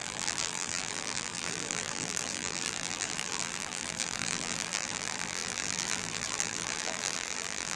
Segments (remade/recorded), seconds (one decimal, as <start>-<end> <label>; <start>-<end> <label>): 0.0-7.8 remade